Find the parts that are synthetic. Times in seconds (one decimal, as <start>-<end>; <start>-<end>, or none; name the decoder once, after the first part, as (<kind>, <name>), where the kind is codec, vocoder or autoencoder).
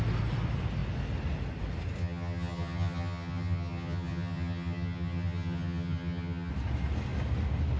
2.0-6.5 (vocoder, HiFi-GAN)